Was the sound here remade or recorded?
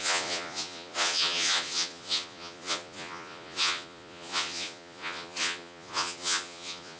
remade